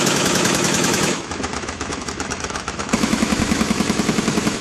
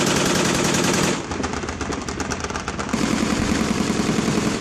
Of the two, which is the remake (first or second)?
first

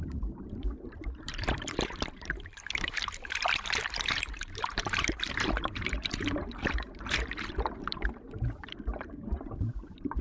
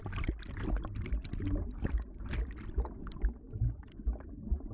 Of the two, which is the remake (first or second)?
first